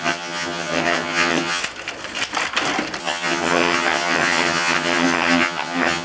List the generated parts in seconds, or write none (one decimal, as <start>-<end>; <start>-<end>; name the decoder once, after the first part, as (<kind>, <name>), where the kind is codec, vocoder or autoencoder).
0.0-1.6 (vocoder, HiFi-GAN); 3.0-6.0

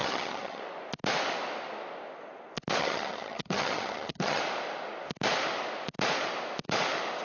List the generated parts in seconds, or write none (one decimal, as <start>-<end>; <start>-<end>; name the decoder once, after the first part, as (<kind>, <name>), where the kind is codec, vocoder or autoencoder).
0.0-0.6 (vocoder, HiFi-GAN); 2.8-4.4

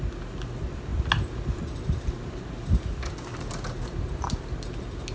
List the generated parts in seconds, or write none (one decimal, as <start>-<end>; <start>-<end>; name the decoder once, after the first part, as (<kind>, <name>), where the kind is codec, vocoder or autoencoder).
none